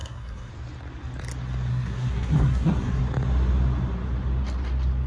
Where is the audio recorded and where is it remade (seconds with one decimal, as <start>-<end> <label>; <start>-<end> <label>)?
0.0-0.5 remade; 0.5-1.7 recorded; 1.7-3.0 remade; 3.0-5.1 recorded